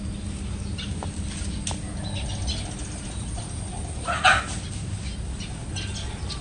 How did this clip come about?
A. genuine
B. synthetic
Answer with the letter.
A